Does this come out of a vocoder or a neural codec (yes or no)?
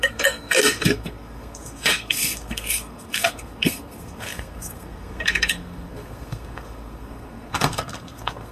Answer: yes